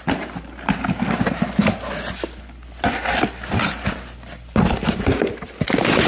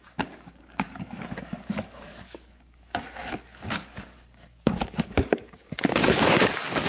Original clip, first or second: first